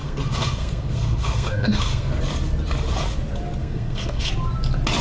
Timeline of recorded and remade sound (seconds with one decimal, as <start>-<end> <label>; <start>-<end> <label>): 0.0-2.2 remade; 2.2-3.6 recorded; 3.6-4.3 remade; 4.3-5.0 recorded